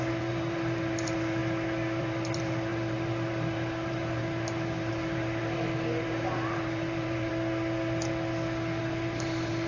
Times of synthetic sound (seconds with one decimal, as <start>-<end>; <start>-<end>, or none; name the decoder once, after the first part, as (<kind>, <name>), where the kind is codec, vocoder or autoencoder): 0.0-1.4 (vocoder, BigVGAN v2); 2.0-7.3; 8.8-9.7